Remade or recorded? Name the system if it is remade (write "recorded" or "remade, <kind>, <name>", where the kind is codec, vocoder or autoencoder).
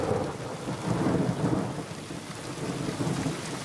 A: recorded